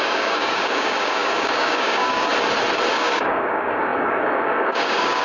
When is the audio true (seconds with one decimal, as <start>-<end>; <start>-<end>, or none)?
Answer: 2.3-2.9